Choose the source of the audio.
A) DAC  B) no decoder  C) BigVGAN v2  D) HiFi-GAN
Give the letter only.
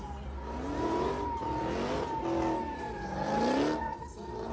B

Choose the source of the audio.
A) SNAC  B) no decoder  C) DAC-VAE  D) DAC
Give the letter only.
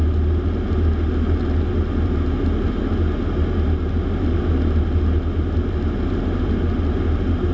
B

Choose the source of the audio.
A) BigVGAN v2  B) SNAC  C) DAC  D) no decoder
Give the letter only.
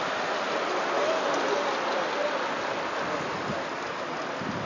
D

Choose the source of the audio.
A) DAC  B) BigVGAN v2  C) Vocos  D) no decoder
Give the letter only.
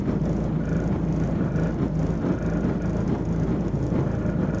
D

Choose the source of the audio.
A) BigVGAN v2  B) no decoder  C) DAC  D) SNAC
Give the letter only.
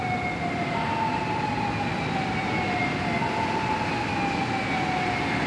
B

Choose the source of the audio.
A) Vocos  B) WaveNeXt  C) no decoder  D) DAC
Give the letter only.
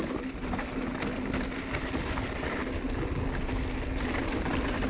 C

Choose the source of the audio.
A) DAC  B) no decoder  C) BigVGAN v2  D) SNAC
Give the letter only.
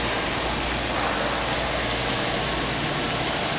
B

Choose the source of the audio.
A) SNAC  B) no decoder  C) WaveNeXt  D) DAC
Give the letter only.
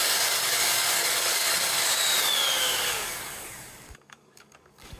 D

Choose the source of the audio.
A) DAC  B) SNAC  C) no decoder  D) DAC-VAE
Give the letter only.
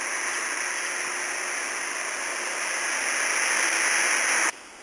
C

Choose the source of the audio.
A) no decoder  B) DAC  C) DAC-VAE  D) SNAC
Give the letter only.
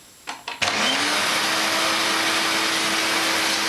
A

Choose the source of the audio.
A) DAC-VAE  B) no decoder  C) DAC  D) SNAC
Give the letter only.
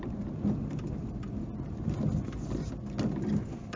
B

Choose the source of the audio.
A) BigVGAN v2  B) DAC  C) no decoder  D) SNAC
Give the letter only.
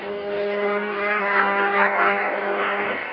B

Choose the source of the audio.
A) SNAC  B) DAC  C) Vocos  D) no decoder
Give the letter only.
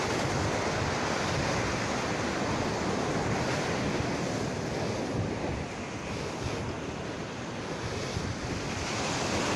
D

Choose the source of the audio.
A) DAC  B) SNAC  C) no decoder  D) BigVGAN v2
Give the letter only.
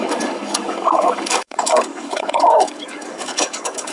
A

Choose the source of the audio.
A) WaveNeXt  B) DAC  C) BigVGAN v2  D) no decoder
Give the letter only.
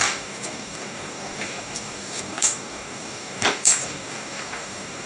B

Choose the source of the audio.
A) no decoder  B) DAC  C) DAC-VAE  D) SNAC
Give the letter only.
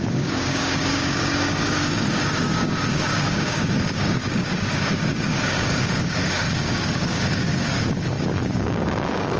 B